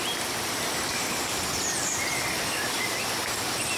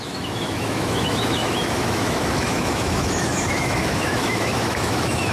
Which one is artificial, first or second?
second